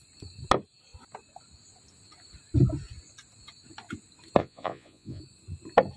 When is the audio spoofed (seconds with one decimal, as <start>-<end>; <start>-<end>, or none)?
4.4-5.2